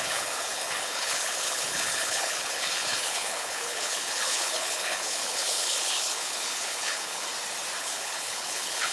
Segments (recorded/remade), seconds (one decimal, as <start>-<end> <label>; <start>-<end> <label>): 0.0-7.3 remade; 7.3-7.8 recorded; 7.8-8.9 remade